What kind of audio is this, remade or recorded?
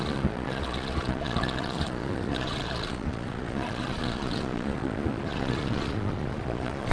remade